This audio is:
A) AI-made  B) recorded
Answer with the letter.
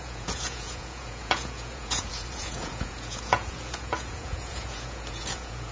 A